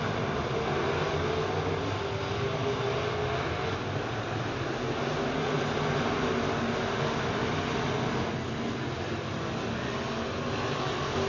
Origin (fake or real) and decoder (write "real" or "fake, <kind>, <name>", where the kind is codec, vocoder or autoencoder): real